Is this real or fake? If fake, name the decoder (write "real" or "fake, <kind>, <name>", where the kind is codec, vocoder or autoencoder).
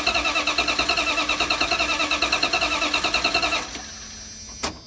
real